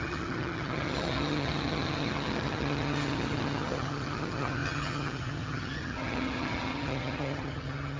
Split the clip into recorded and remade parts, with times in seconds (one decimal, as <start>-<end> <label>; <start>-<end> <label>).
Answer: 0.0-8.0 remade